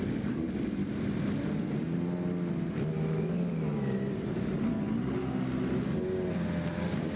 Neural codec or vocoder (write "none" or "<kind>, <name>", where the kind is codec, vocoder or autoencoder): none